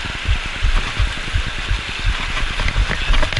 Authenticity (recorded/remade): recorded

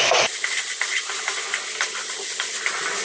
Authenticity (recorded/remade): recorded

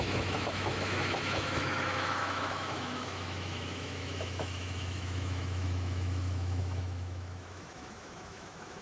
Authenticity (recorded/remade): remade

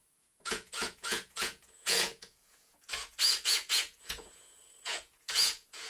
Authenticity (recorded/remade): remade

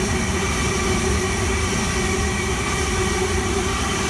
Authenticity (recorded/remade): recorded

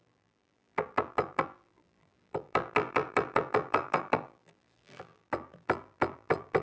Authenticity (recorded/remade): remade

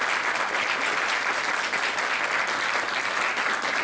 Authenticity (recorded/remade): recorded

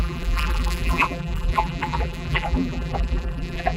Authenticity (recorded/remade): remade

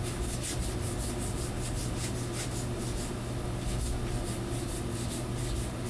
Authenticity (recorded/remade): recorded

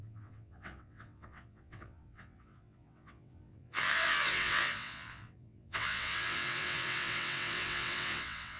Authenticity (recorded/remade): remade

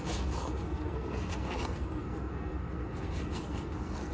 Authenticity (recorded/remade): remade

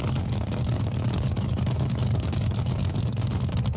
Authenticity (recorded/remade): remade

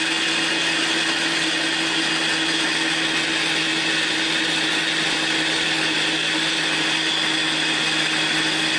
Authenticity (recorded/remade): recorded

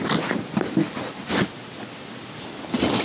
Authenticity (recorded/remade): recorded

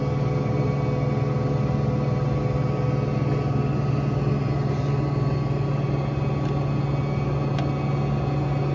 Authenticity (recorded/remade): recorded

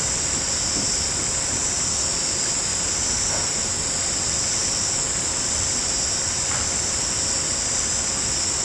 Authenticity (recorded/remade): recorded